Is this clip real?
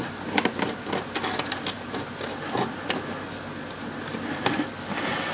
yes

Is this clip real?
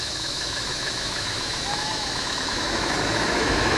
no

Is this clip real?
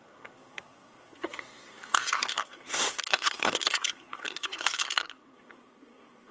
no